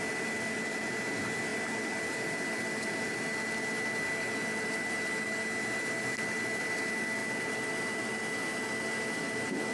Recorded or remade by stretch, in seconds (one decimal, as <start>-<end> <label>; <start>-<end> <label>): 0.0-9.7 recorded